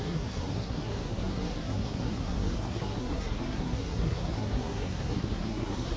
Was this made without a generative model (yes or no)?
no